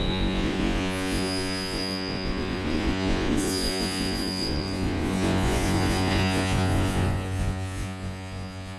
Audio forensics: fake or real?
fake